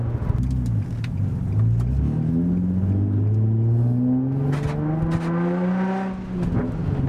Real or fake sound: real